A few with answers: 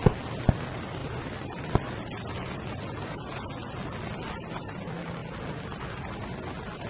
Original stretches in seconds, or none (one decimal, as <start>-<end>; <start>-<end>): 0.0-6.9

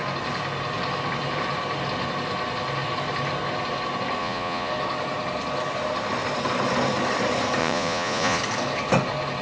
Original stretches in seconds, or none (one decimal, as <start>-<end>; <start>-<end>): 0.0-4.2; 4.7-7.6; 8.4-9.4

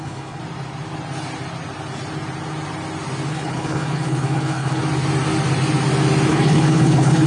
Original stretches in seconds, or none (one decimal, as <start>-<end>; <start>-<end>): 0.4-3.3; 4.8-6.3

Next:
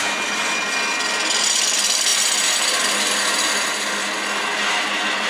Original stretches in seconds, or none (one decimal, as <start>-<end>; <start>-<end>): 0.0-5.3

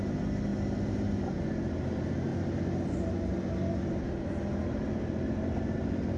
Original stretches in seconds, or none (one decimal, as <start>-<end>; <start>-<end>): 0.0-6.2